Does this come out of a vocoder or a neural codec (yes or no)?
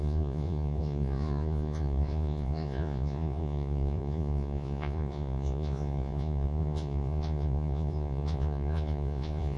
yes